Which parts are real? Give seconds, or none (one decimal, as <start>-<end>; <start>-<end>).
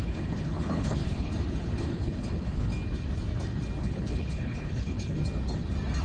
1.3-1.8; 2.7-3.8; 5.2-6.0